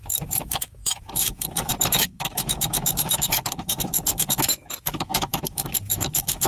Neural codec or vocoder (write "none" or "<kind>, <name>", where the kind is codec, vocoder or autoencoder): autoencoder, DAC-VAE